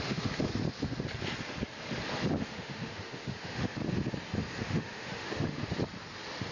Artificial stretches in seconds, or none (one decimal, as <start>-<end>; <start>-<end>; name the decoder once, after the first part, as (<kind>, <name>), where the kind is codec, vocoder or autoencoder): 0.0-0.5 (autoencoder, DAC-VAE); 2.4-3.8; 4.6-5.6